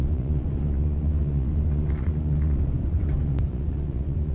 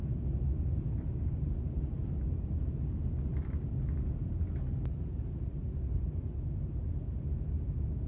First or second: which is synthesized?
first